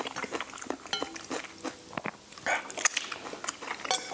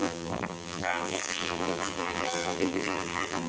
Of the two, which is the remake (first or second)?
second